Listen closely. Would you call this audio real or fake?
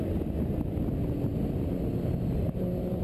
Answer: real